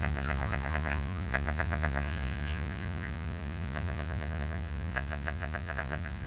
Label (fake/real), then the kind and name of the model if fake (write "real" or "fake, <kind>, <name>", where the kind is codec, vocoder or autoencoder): fake, vocoder, Vocos